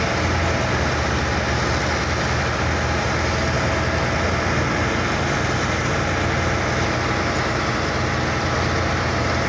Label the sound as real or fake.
real